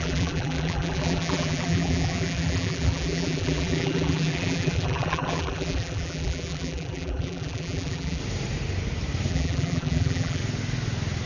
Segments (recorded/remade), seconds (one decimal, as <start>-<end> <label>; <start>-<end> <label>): 0.0-8.2 remade; 8.2-9.3 recorded; 9.3-10.4 remade; 10.4-11.3 recorded